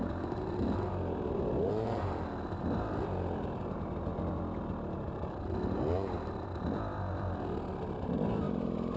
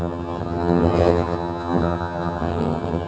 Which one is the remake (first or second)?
second